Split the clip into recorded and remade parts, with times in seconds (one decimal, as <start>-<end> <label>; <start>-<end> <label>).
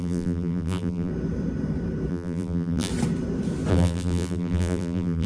0.0-1.1 remade; 1.1-2.1 recorded; 2.1-2.9 remade; 2.9-3.7 recorded; 3.7-5.3 remade